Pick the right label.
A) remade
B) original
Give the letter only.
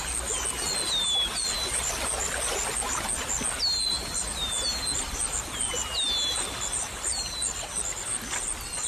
B